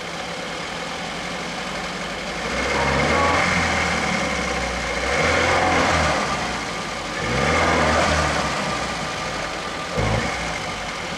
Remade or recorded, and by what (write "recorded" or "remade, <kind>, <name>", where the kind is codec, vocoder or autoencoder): recorded